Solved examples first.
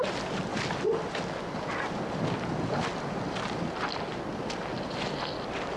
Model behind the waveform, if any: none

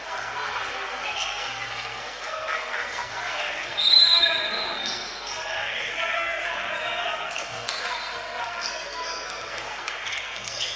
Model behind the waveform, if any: codec, SNAC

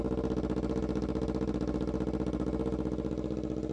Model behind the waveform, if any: none